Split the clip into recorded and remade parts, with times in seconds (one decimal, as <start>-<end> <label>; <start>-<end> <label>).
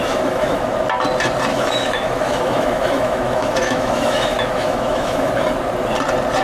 0.0-0.7 remade; 0.7-1.5 recorded; 1.5-5.3 remade; 5.3-6.4 recorded